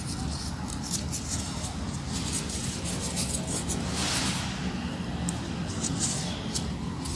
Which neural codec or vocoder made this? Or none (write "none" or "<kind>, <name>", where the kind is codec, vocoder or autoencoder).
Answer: none